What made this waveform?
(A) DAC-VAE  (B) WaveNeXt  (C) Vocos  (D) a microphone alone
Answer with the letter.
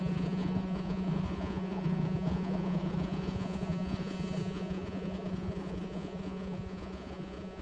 C